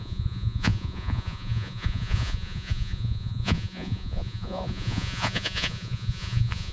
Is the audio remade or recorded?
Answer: remade